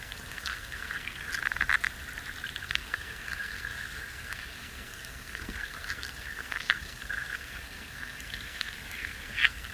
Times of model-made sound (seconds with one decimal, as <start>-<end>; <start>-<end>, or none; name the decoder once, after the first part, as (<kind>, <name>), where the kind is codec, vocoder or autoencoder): 0.0-1.3 (codec, SNAC); 2.6-9.7

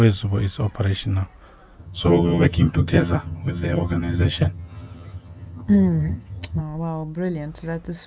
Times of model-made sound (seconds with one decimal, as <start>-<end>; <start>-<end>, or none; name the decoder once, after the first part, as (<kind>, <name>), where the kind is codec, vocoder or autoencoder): 1.8-6.6 (vocoder, HiFi-GAN)